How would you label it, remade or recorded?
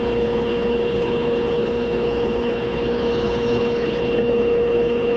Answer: remade